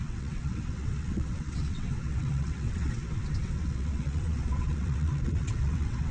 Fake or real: fake